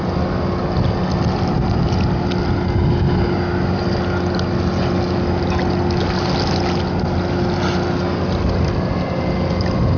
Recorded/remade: recorded